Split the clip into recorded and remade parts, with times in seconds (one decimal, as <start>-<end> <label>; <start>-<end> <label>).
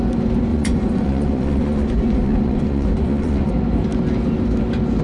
0.0-0.5 recorded; 0.5-3.5 remade; 3.5-5.0 recorded